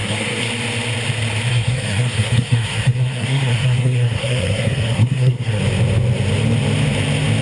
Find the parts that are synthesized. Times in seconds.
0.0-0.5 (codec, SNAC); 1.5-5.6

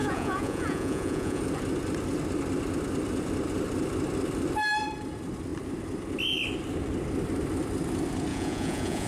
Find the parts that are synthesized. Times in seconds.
0.0-1.4 (vocoder, Vocos); 8.3-9.1